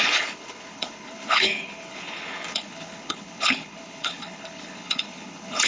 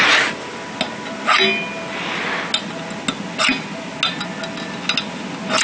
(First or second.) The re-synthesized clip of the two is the first